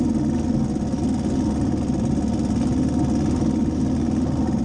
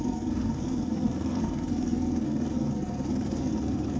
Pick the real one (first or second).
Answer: first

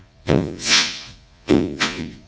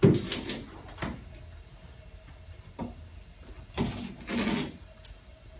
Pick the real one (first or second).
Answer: second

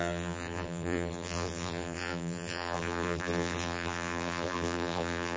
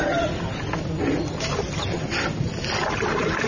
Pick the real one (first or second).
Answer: second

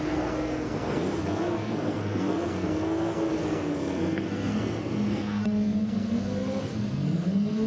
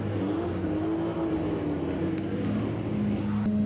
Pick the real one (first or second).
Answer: second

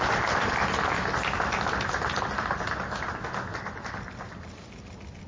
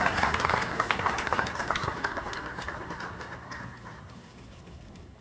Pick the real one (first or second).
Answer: first